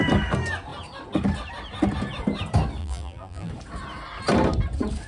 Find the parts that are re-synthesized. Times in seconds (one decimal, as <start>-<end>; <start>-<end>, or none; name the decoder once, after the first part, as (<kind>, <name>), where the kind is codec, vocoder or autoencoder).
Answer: 2.8-3.5 (vocoder, BigVGAN v2)